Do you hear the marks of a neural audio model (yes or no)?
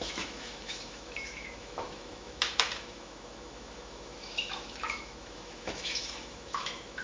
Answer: yes